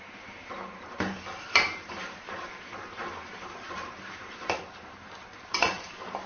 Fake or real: fake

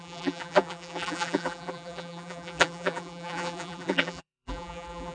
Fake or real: fake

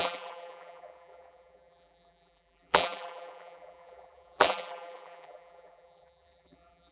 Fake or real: fake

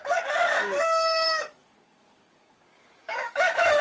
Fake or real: fake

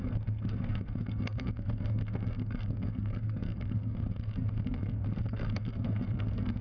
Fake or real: fake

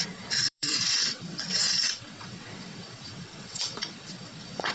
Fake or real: fake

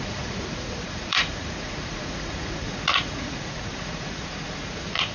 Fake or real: fake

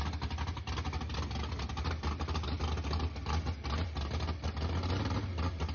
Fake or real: real